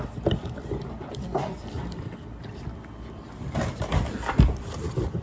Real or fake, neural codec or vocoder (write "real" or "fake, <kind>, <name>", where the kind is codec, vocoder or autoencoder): fake, vocoder, BigVGAN v2